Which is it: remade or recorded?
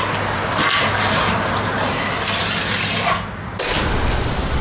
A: recorded